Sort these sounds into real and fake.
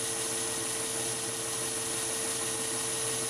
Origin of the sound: real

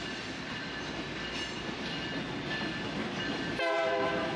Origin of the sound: real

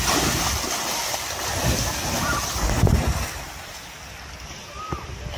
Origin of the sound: real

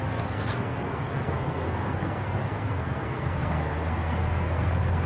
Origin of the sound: fake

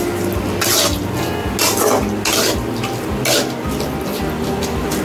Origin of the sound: real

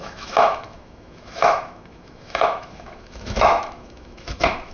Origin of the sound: fake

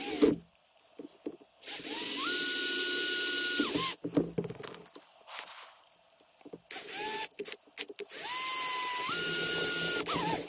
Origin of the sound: real